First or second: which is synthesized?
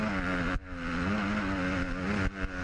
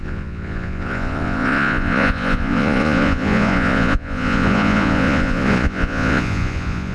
second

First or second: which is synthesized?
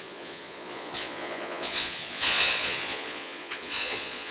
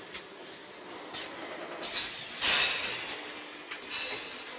first